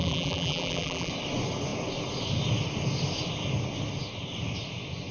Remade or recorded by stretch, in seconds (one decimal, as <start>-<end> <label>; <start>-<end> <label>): 0.0-1.1 remade; 1.1-5.1 recorded